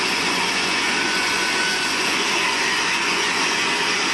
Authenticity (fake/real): fake